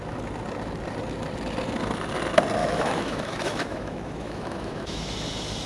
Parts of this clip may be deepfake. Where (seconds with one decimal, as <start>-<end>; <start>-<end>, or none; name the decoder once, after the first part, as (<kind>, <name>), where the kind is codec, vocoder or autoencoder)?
2.6-5.1 (autoencoder, DAC-VAE)